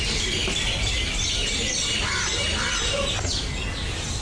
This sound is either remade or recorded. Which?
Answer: recorded